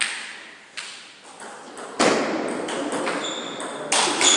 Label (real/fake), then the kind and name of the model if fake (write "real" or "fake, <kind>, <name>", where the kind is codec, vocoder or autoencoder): real